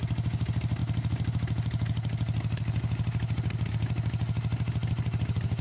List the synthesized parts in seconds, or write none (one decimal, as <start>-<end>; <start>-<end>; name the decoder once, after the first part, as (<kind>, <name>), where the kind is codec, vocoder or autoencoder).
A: none